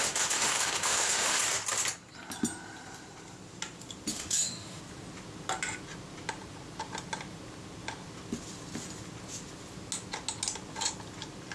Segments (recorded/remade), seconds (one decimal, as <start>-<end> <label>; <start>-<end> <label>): 0.0-1.4 remade; 1.4-4.1 recorded; 4.1-4.8 remade; 4.8-11.5 recorded